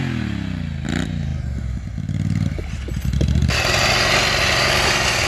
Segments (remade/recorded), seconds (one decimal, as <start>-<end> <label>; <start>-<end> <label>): 0.0-5.3 recorded